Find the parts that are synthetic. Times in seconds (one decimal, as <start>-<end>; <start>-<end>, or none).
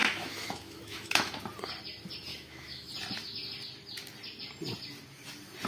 0.0-1.4; 2.3-2.9